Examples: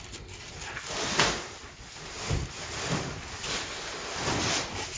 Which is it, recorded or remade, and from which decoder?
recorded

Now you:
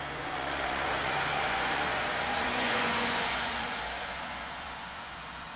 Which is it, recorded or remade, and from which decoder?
remade, vocoder, Vocos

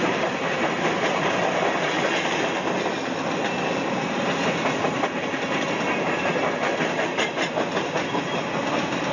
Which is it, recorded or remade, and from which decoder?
recorded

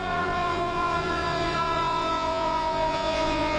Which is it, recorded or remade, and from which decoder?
remade, vocoder, Vocos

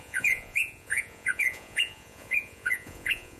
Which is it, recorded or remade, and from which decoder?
remade, vocoder, Vocos